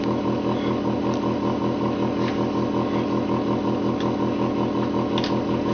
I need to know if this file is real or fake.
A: real